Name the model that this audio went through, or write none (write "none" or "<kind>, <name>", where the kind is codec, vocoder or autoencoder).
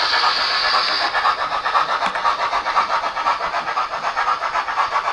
none